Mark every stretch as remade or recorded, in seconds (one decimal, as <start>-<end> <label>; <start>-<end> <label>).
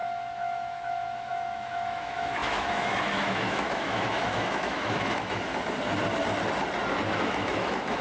0.0-5.5 remade; 5.5-7.1 recorded; 7.1-8.0 remade